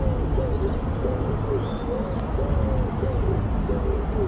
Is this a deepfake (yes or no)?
no